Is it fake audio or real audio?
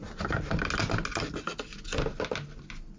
real